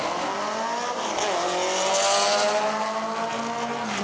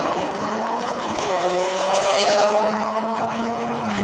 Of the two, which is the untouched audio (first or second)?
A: first